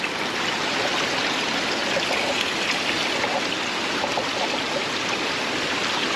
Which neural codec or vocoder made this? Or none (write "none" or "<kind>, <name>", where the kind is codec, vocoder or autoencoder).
none